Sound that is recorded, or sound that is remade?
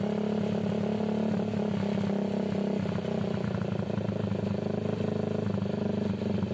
recorded